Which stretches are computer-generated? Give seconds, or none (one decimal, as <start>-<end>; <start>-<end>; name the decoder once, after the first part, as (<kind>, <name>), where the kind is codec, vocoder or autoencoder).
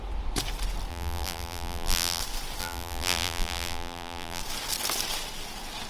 0.9-2.2 (vocoder, BigVGAN v2); 2.6-4.4